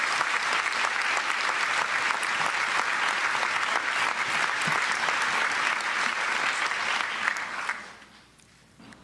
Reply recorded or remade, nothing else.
recorded